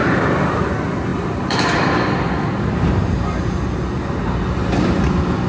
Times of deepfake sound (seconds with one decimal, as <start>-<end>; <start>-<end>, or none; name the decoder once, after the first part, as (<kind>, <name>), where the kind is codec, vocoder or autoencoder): 0.0-0.7 (vocoder, BigVGAN v2); 1.1-2.7